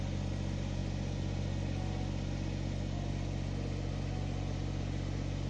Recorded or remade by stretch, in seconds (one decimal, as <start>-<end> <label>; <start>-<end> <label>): 0.0-5.5 recorded